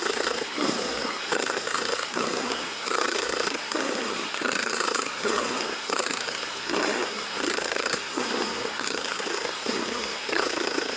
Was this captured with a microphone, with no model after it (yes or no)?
no